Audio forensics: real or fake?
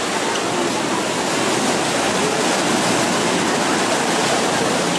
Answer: real